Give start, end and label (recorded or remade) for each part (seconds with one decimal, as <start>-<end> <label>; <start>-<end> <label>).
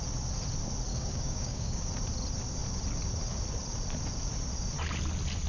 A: 0.0-0.9 recorded; 0.9-1.9 remade; 1.9-5.5 recorded